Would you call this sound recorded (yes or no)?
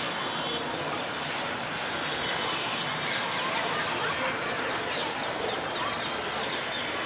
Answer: yes